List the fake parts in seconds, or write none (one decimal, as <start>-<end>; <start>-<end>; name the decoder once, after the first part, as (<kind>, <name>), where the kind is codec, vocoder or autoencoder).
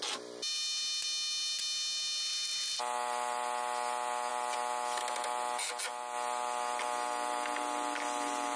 none